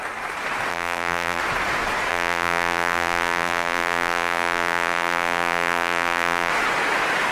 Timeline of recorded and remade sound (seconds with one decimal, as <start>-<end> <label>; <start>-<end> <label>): 0.0-0.7 recorded; 0.7-1.4 remade; 1.4-2.1 recorded; 2.1-6.5 remade; 6.5-7.3 recorded